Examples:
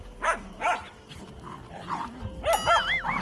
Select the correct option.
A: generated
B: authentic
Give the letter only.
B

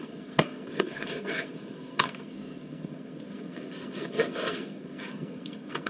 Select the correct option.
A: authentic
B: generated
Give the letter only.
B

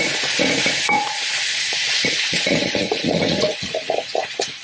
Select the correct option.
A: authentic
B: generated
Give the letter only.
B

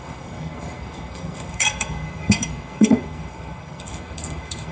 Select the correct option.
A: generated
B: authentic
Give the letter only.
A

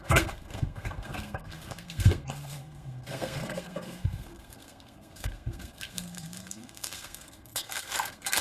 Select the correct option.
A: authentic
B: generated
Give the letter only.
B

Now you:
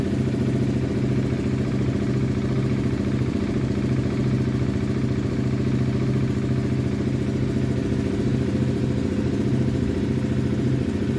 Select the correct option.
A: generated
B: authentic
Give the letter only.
B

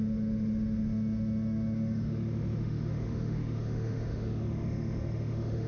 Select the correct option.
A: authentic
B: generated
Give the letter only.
B